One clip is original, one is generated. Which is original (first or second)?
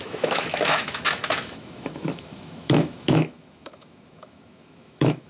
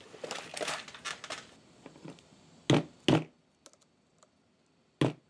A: second